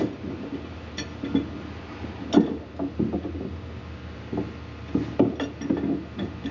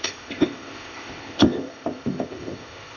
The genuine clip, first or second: first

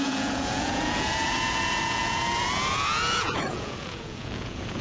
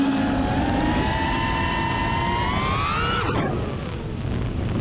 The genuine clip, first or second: second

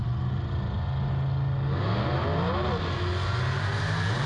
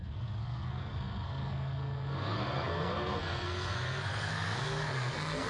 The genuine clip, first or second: first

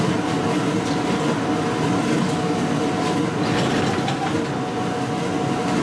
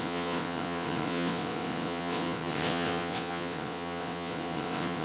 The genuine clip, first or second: first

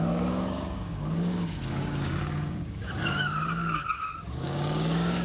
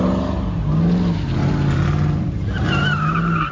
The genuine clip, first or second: second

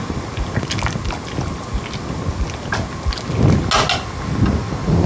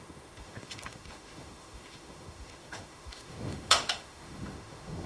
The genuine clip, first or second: first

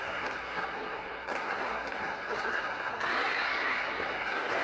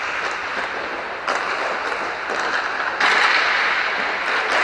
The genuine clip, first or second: second